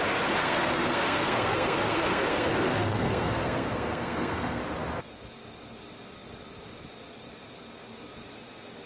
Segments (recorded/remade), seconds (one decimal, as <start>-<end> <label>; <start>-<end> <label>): 0.0-0.4 recorded; 0.4-4.6 remade; 4.6-8.9 recorded